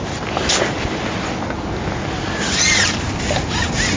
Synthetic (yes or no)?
no